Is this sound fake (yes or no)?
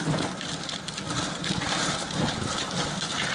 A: no